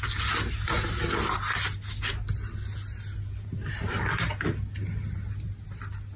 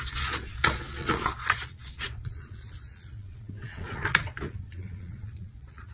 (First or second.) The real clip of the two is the first